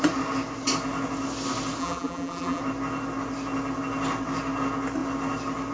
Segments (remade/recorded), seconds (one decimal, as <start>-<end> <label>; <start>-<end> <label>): 0.0-1.8 recorded; 1.8-2.6 remade; 2.6-5.7 recorded